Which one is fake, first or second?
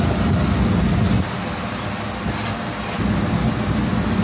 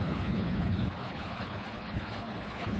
second